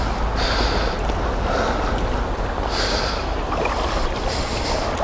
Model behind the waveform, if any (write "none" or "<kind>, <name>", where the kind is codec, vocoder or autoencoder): none